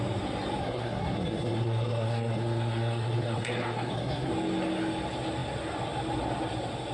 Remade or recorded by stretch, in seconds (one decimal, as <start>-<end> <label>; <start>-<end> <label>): 0.0-0.6 recorded; 0.6-4.3 remade; 4.3-6.9 recorded